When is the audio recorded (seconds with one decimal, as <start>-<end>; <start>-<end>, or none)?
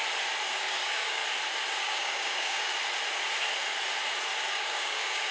0.0-0.5; 1.2-1.8; 2.7-4.5